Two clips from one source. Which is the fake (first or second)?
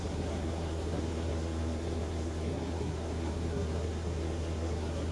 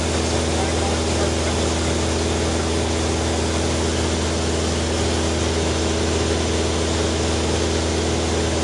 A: first